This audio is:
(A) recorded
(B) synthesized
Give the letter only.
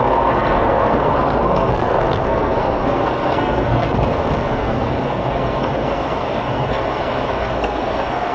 B